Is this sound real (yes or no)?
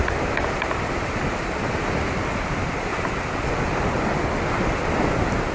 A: yes